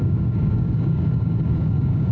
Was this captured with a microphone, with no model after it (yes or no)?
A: no